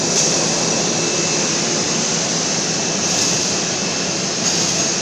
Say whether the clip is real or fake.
real